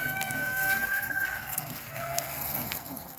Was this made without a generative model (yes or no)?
no